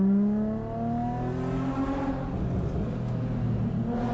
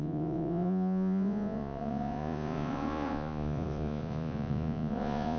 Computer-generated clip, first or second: second